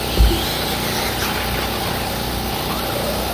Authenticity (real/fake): real